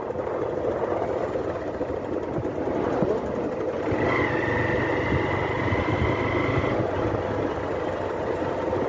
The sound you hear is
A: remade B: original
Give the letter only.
B